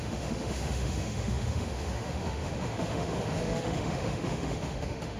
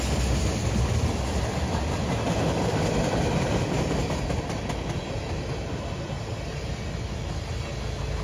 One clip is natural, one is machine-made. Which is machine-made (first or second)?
first